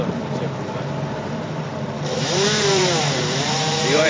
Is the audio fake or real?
fake